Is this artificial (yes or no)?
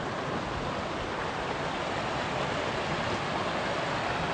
no